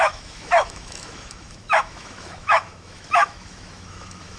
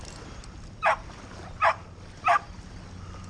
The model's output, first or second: first